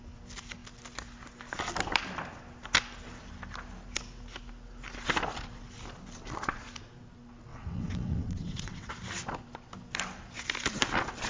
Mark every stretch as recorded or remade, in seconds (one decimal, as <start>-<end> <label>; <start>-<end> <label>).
0.0-7.5 recorded; 7.5-8.9 remade; 8.9-11.3 recorded